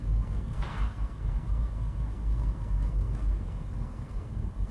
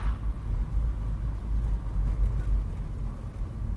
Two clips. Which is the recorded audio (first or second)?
second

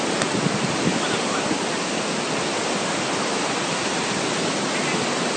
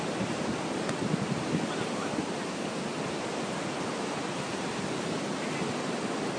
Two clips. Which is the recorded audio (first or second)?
first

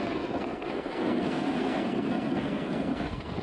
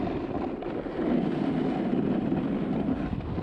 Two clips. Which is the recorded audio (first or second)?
second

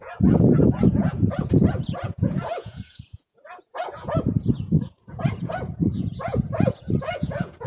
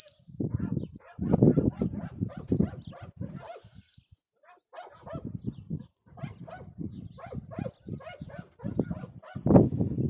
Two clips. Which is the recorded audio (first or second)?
second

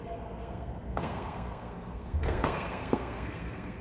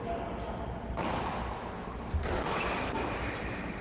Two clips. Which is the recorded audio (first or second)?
second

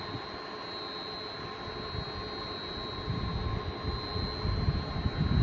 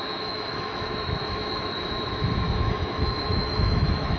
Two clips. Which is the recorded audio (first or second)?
first